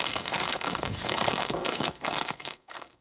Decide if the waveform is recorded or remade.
remade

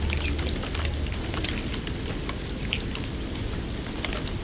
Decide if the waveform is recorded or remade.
recorded